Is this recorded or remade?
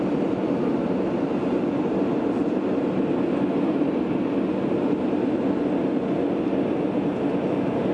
recorded